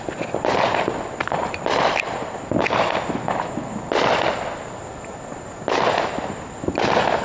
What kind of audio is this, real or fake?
real